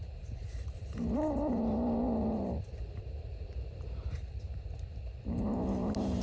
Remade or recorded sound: remade